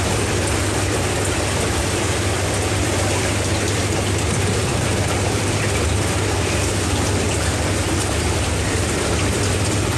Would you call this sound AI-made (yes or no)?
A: yes